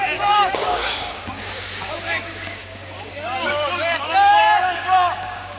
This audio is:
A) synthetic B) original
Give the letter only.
A